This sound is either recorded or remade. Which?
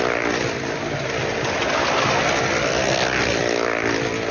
recorded